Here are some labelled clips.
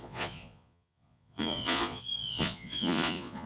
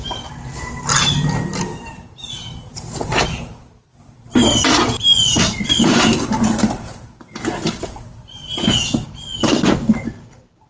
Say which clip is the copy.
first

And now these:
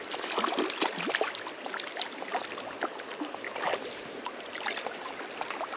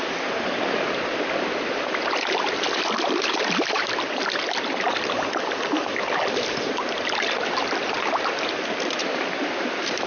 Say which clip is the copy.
second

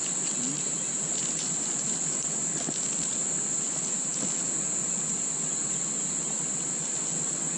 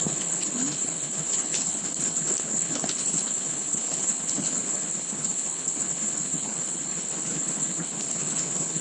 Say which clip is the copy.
second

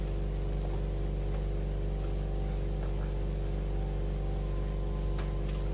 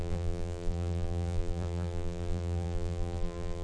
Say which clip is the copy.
second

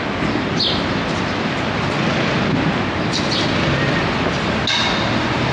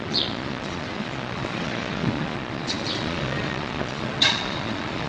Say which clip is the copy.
second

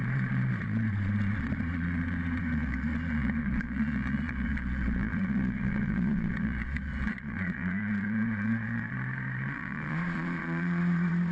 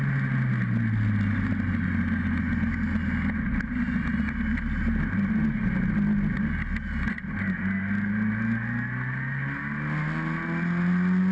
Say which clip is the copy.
first